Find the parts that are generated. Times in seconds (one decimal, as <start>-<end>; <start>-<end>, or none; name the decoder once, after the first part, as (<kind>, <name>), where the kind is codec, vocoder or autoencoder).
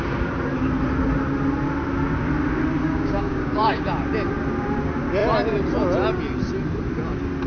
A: 2.8-3.8 (codec, DAC)